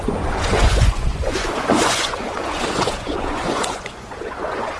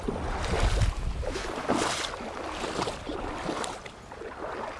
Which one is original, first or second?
second